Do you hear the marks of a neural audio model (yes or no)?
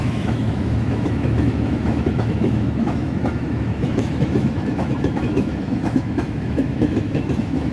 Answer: yes